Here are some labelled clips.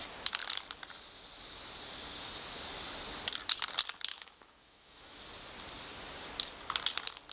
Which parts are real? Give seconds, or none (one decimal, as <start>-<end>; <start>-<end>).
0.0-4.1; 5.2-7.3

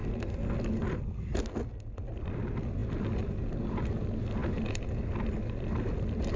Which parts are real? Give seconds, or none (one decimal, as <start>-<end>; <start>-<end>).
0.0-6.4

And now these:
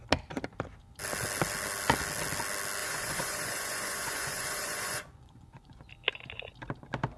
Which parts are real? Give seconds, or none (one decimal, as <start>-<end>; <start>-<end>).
0.0-2.8; 5.9-7.2

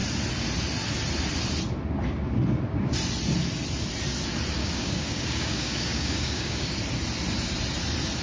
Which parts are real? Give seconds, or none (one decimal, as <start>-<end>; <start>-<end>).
0.0-4.6; 6.8-8.2